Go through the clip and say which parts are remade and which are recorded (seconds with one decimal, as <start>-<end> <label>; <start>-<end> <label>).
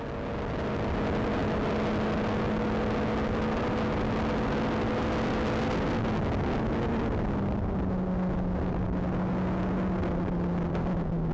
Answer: 0.0-11.3 recorded